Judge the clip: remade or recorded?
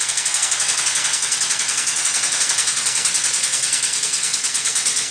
remade